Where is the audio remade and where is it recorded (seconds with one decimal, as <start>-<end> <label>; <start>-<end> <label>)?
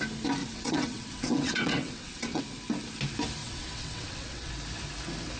0.0-0.4 recorded; 0.4-2.4 remade; 2.4-3.4 recorded; 3.4-4.5 remade; 4.5-5.4 recorded